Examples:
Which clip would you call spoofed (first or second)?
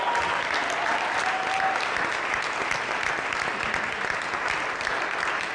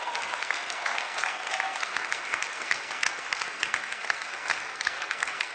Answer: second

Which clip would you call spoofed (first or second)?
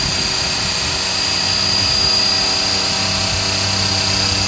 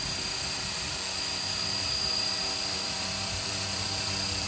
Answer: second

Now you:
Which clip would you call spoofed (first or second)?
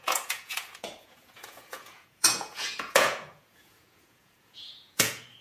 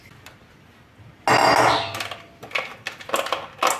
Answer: first